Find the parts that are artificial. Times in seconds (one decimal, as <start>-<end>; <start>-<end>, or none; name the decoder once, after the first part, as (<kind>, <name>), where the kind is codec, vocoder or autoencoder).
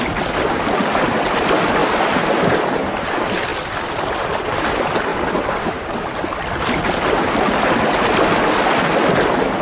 1.8-3.1 (vocoder, BigVGAN v2); 3.5-4.0; 5.1-6.1